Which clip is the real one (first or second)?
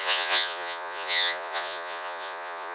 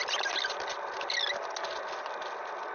second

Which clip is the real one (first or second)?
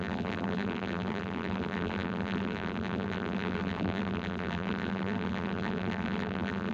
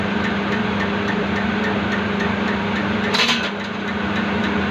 second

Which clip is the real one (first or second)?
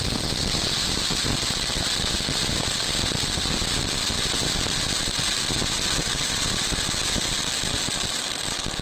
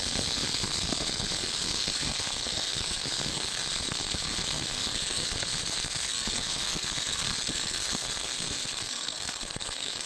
first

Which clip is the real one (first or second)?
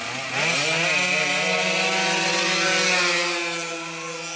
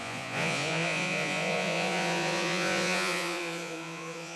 first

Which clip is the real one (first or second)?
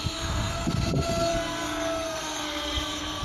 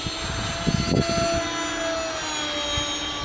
second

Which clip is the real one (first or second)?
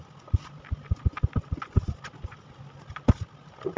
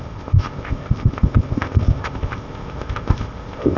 first